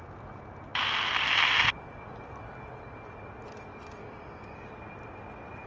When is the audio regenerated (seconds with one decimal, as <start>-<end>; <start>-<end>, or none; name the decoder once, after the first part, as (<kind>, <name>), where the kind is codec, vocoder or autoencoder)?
4.0-4.7 (codec, DAC)